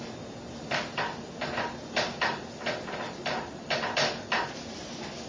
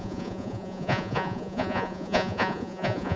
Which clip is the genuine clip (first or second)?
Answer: first